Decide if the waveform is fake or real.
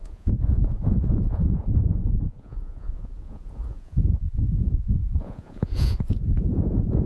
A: fake